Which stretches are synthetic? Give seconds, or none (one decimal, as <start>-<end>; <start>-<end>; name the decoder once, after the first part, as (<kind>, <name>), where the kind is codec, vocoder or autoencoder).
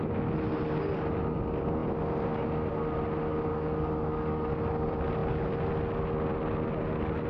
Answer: 3.5-4.5 (codec, DAC)